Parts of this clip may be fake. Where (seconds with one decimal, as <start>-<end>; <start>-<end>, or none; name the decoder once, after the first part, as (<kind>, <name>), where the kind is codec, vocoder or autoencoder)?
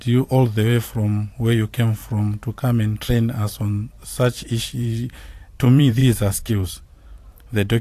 0.0-2.0 (vocoder, BigVGAN v2); 3.1-4.0; 4.6-6.0; 6.5-7.8